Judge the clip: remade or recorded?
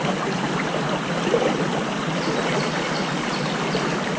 recorded